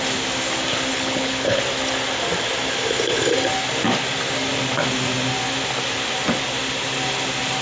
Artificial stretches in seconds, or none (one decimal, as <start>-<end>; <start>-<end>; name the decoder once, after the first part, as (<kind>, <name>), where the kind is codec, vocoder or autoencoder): 0.9-1.6 (codec, HILCodec)